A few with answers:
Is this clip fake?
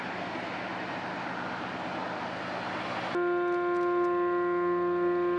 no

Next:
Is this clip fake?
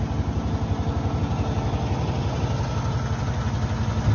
no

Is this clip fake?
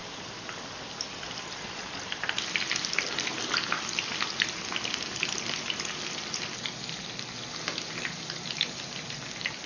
no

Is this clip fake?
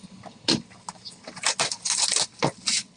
no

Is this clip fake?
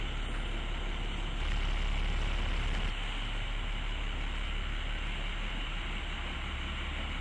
no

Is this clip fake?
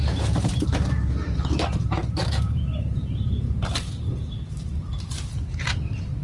yes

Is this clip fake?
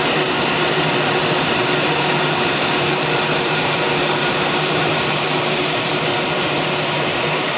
yes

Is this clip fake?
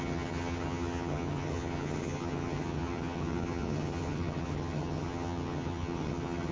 yes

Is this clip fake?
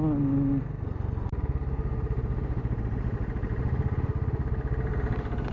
no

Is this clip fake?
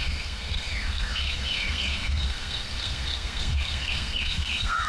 yes